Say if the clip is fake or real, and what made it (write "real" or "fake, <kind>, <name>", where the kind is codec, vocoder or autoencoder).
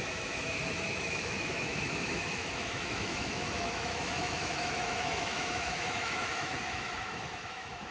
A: fake, autoencoder, DAC-VAE